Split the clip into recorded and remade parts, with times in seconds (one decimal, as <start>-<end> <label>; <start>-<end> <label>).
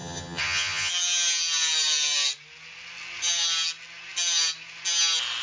0.0-0.9 remade; 0.9-5.4 recorded